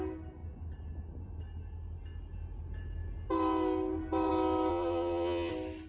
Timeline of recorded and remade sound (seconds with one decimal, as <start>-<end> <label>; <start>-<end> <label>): 0.0-4.7 recorded; 4.7-5.5 remade; 5.5-5.9 recorded